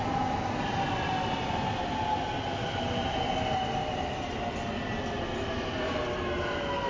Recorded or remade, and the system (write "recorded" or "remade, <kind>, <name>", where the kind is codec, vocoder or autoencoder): recorded